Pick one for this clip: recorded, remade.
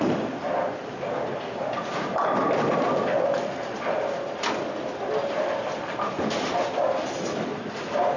recorded